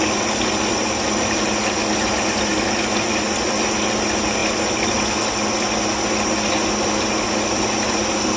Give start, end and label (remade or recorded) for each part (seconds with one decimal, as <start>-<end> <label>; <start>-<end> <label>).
0.0-8.4 recorded